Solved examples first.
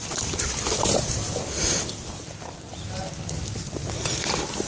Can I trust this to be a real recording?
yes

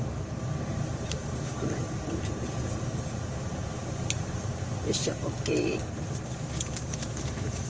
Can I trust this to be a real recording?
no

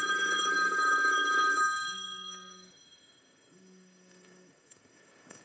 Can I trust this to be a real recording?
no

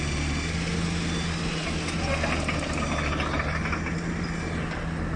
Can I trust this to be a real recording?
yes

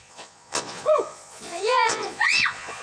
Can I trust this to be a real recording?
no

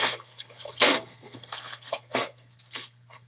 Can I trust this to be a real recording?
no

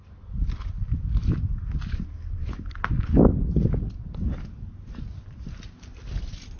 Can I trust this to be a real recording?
yes